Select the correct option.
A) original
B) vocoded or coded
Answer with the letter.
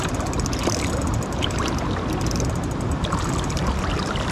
A